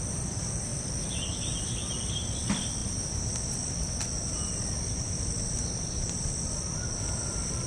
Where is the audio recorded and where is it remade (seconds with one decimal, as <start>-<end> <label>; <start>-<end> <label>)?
0.0-7.7 recorded